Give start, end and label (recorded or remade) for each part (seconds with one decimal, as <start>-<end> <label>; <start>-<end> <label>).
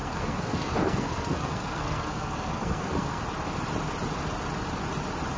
0.0-3.2 remade; 3.2-5.4 recorded